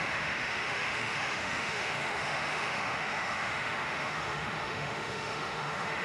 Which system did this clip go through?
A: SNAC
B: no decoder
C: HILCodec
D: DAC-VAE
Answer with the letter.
D